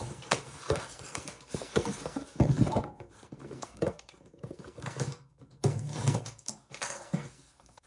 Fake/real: fake